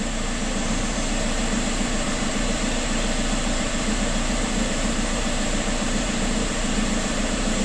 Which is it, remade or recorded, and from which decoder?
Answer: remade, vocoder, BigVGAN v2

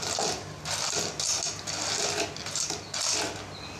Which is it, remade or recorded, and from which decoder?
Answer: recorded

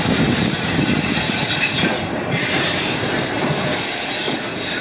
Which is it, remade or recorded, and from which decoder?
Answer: remade, vocoder, BigVGAN v2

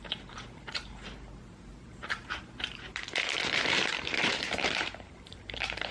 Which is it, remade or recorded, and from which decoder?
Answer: remade, vocoder, BigVGAN v2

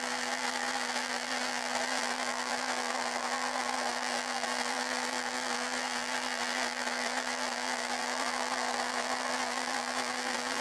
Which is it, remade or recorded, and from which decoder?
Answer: remade, vocoder, BigVGAN v2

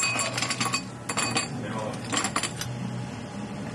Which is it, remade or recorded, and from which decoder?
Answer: recorded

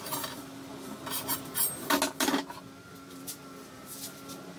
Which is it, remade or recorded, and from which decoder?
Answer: recorded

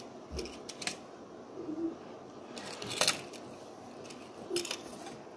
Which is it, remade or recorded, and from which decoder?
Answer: recorded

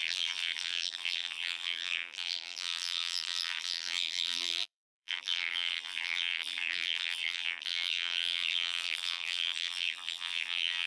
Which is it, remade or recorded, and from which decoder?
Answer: remade, vocoder, BigVGAN v2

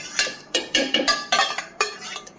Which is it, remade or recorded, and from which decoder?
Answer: remade, vocoder, BigVGAN v2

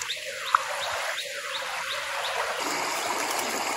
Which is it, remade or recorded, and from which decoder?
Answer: recorded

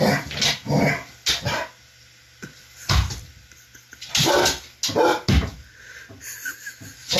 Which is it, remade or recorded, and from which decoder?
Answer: recorded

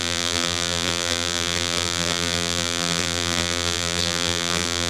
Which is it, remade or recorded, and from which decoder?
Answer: remade, vocoder, BigVGAN v2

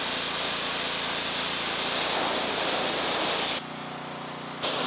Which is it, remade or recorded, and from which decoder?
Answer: recorded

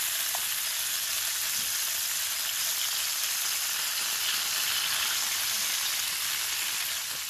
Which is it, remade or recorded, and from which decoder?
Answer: recorded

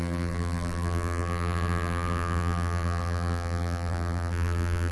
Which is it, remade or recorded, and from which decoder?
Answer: remade, vocoder, BigVGAN v2